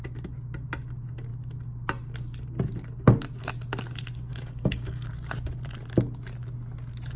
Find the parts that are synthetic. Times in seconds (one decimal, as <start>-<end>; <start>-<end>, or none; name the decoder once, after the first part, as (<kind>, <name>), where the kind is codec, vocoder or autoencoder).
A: 4.3-5.1 (codec, DAC)